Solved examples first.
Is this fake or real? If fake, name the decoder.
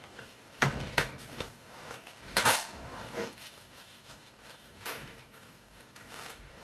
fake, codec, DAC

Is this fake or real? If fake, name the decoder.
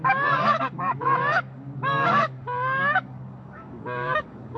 fake, codec, DAC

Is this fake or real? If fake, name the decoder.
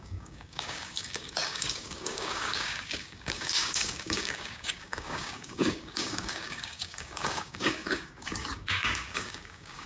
fake, codec, DAC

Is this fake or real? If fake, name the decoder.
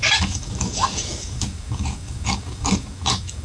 fake, codec, DAC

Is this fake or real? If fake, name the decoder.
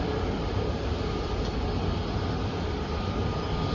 real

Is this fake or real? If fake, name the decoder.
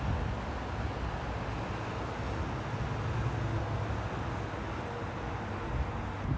real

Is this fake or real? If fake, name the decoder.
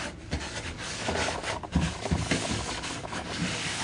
fake, codec, DAC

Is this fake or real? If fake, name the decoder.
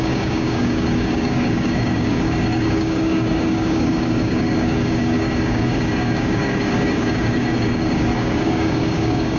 fake, codec, DAC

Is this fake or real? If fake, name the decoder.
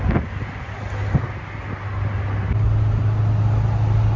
real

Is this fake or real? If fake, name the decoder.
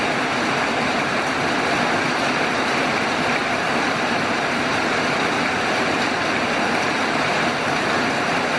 real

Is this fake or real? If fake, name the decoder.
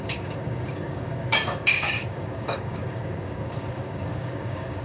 fake, codec, DAC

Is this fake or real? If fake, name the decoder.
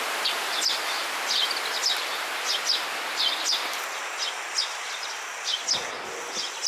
real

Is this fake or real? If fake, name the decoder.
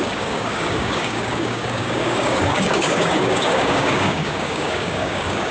fake, codec, DAC